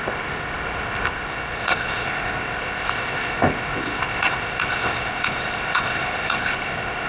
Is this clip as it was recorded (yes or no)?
no